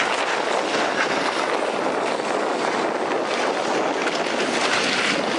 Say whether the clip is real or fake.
real